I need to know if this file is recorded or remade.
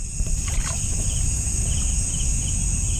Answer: recorded